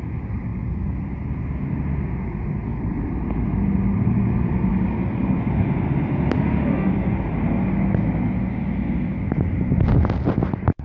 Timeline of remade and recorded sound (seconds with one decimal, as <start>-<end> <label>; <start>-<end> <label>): 0.0-2.7 recorded; 2.7-4.7 remade; 4.7-10.8 recorded